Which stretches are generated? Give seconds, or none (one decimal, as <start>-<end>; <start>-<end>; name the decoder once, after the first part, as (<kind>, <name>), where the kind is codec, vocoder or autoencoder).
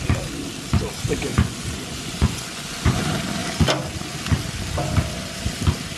1.3-3.0 (vocoder, Vocos)